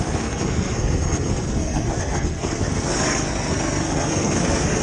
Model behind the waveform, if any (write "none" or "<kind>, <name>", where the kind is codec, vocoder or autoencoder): codec, SNAC